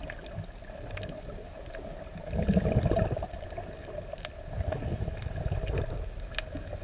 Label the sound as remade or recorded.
recorded